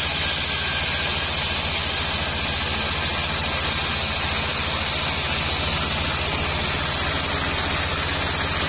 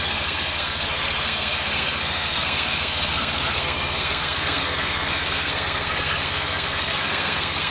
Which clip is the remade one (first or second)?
second